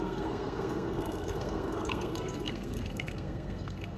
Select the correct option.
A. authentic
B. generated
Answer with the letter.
B